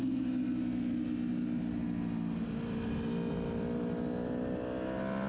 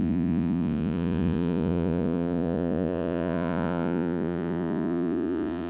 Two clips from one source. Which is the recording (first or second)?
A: first